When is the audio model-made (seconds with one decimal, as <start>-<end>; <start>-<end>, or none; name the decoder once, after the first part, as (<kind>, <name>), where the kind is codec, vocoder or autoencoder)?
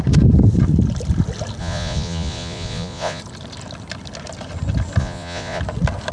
1.6-3.2 (vocoder, Vocos); 5.0-5.6